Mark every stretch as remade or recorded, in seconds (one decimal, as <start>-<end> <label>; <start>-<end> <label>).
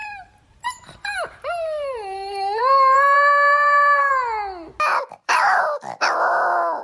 0.0-4.1 remade; 4.1-4.9 recorded; 4.9-5.6 remade; 5.6-6.8 recorded